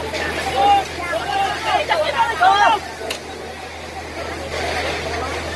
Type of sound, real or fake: real